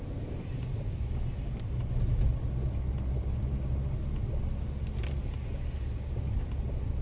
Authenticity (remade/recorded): recorded